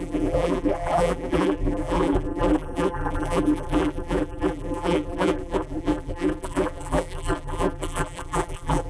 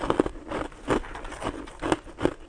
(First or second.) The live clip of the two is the second